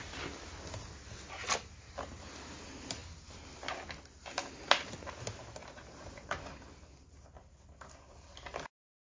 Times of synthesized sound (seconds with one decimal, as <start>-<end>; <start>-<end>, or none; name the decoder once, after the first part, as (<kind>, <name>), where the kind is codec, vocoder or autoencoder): 5.6-7.2 (vocoder, BigVGAN v2)